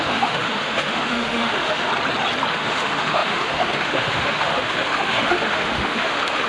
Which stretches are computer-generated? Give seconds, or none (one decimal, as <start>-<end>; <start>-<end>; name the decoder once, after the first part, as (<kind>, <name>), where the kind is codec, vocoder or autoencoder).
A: 0.0-1.9 (autoencoder, DAC-VAE); 2.5-6.5